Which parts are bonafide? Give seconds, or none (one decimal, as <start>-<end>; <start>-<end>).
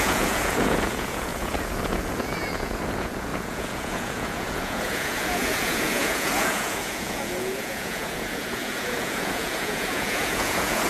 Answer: none